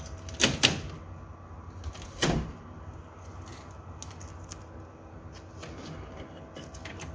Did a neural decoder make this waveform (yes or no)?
no